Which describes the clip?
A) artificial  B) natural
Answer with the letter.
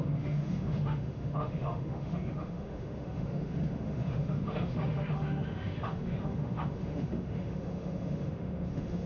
A